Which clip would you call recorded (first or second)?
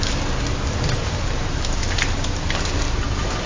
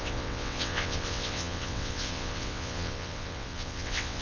first